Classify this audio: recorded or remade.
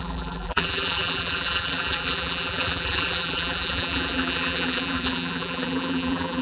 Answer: remade